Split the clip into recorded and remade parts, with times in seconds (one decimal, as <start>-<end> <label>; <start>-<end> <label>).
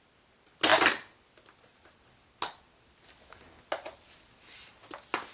0.0-5.3 recorded